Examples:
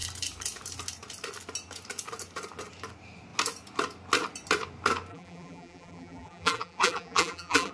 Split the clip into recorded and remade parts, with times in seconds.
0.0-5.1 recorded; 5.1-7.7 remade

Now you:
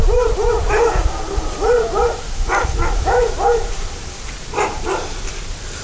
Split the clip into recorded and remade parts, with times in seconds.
0.0-0.8 remade; 0.8-3.7 recorded; 3.7-5.3 remade; 5.3-5.8 recorded

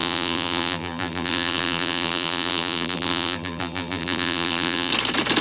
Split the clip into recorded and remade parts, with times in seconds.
0.0-4.9 remade; 4.9-5.4 recorded